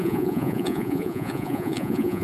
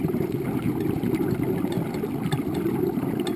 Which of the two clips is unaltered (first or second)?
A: second